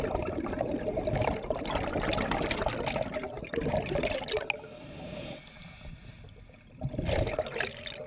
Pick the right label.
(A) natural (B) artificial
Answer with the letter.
A